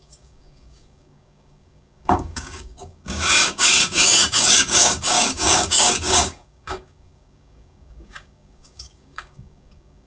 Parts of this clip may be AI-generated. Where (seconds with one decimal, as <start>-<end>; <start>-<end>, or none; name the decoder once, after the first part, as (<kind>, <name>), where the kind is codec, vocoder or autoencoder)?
0.0-10.1 (codec, DAC)